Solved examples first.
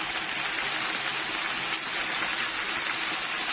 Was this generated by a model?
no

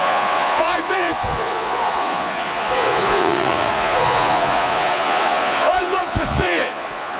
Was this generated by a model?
yes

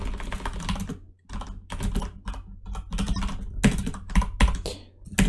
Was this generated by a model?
no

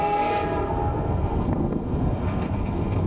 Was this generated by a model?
yes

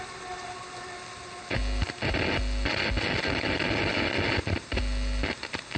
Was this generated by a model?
no